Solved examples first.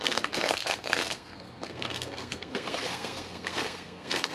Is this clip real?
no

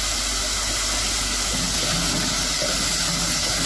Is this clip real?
yes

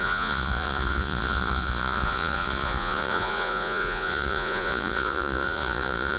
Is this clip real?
no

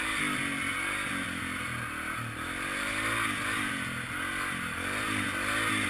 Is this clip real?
yes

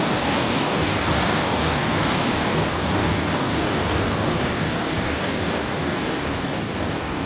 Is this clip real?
no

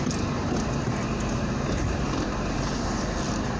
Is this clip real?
yes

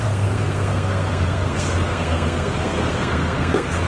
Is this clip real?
no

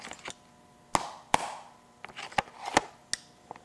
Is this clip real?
yes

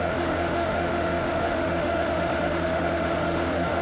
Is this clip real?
no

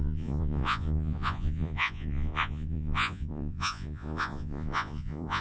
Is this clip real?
no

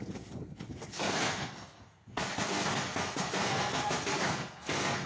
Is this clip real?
no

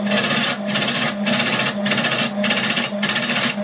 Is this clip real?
yes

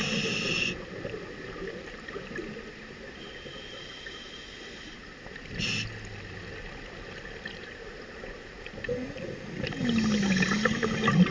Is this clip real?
yes